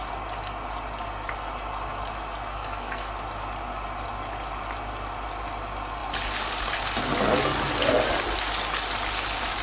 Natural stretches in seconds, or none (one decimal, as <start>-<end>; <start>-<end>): 0.0-2.5; 3.1-9.6